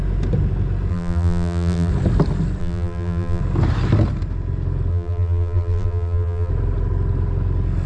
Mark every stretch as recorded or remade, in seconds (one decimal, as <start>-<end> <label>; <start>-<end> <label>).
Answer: 0.0-0.9 recorded; 0.9-1.9 remade; 1.9-2.6 recorded; 2.6-3.4 remade; 3.4-4.9 recorded; 4.9-6.5 remade; 6.5-7.9 recorded